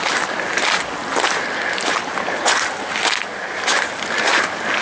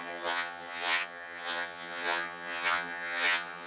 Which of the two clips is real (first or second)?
first